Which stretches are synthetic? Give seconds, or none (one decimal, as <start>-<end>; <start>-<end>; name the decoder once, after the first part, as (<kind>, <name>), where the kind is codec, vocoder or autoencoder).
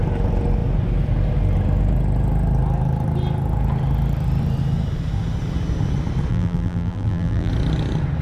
6.3-7.5 (vocoder, BigVGAN v2)